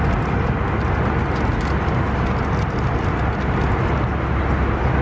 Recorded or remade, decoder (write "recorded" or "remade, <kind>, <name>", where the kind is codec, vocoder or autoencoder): recorded